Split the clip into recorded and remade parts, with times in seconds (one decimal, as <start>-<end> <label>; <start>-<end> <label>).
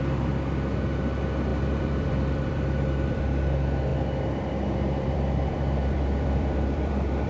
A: 0.0-1.5 recorded; 1.5-3.2 remade; 3.2-3.9 recorded; 3.9-7.3 remade